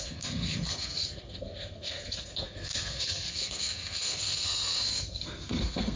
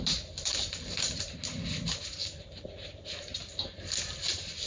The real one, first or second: second